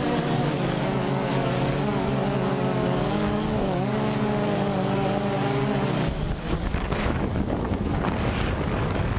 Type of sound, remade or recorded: remade